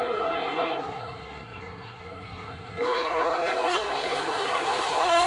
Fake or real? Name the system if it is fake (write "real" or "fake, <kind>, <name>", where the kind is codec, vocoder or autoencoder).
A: fake, codec, SNAC